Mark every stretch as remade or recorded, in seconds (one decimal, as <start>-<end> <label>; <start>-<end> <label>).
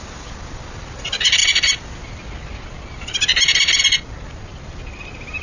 0.0-5.4 recorded